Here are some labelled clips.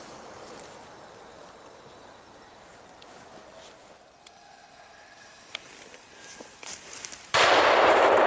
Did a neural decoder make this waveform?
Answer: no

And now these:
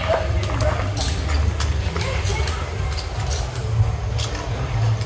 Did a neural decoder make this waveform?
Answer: no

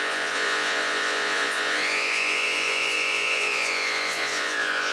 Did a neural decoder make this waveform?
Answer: yes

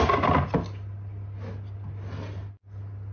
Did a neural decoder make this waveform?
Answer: no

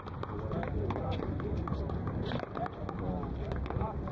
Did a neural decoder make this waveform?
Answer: no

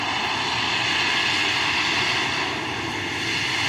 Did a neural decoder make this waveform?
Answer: no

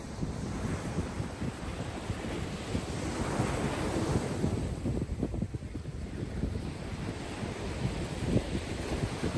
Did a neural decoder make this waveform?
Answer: yes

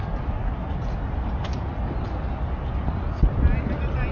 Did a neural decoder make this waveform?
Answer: no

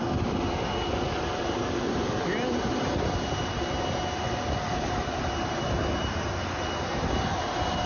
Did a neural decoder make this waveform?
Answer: no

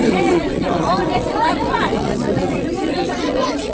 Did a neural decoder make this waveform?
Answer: yes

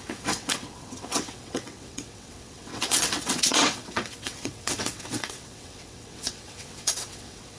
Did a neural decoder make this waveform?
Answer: yes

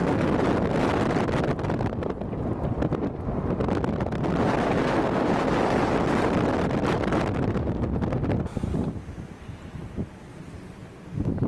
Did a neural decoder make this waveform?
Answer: no